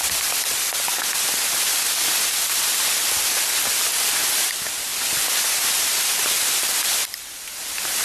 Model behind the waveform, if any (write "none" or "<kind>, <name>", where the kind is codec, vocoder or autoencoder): vocoder, BigVGAN v2